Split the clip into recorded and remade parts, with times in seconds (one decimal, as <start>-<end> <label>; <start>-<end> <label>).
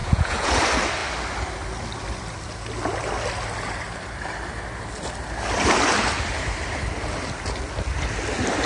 0.0-0.6 remade; 0.6-8.7 recorded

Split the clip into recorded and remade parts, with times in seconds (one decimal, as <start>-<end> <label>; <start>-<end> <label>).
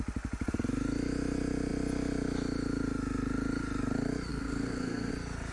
0.0-4.3 recorded; 4.3-5.1 remade; 5.1-5.5 recorded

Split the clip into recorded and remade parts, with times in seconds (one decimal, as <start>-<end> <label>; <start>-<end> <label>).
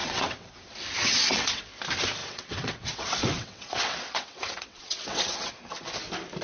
0.0-0.5 remade; 0.5-1.1 recorded; 1.1-1.6 remade; 1.6-2.2 recorded; 2.2-5.5 remade; 5.5-6.4 recorded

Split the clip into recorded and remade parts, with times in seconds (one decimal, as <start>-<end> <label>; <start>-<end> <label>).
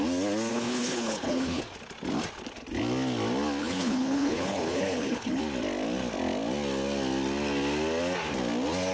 0.0-0.5 recorded; 0.5-1.6 remade; 1.6-3.6 recorded; 3.6-5.4 remade; 5.4-8.9 recorded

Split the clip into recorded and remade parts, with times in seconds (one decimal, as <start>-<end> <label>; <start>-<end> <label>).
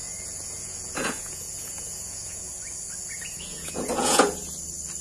0.0-2.5 remade; 2.5-3.5 recorded; 3.5-4.5 remade; 4.5-5.0 recorded